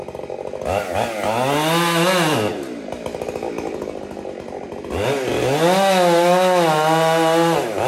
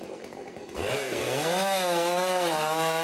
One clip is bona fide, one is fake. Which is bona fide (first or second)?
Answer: first